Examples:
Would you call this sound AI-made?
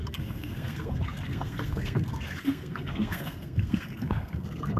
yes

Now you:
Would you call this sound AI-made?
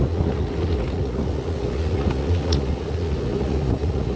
yes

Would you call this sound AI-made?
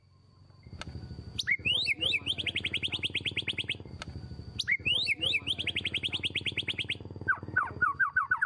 no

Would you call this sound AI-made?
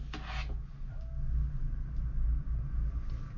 no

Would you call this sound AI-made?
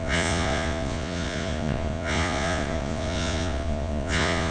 yes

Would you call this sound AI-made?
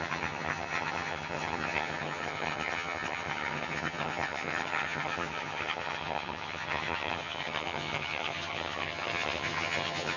yes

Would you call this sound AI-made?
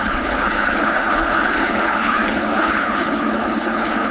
yes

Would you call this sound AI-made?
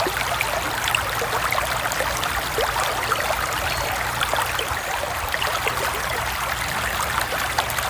no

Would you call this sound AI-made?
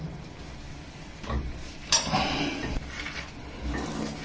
no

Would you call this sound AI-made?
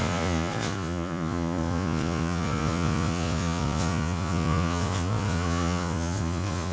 yes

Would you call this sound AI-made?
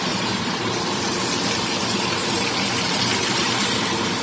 yes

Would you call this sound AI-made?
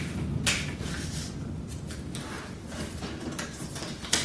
no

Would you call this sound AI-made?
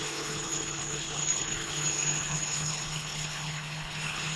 yes